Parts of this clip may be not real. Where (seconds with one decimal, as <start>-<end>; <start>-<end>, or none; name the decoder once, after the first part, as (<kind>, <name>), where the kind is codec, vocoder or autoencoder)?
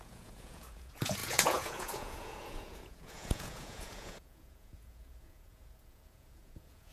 0.0-6.9 (vocoder, Vocos)